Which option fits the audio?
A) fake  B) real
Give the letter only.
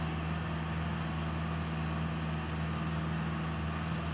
B